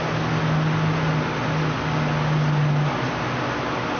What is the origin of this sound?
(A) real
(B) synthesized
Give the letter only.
A